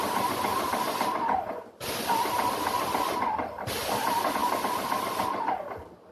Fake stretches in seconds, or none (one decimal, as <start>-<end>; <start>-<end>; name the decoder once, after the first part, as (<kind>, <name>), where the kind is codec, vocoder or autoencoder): none